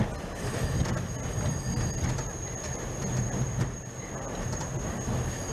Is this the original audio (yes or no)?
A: yes